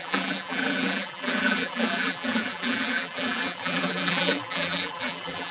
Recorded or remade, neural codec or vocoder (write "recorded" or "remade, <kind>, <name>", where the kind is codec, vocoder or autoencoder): remade, vocoder, BigVGAN v2